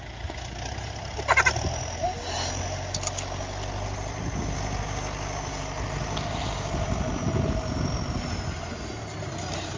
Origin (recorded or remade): recorded